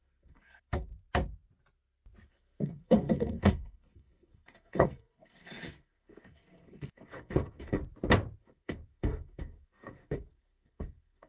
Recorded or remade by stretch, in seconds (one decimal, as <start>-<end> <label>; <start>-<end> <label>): 0.0-0.9 remade; 0.9-2.3 recorded; 2.3-7.8 remade; 7.8-8.4 recorded; 8.4-11.3 remade